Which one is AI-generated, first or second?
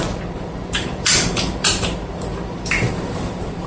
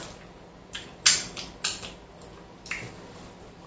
first